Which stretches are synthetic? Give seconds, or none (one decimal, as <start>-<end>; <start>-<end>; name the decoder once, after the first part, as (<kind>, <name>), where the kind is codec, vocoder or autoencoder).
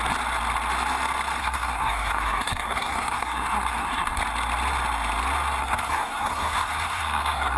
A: 1.4-4.2 (codec, SNAC); 5.6-7.6